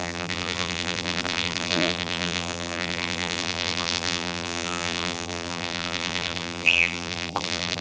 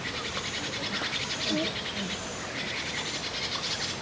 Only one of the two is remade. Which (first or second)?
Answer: first